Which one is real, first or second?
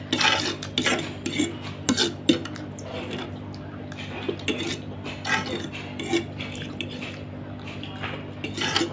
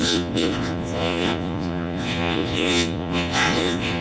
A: first